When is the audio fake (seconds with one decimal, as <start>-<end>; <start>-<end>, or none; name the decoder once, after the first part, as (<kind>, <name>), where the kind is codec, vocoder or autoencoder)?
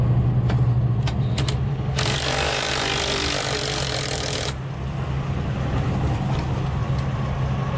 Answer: 1.7-2.7 (codec, DAC)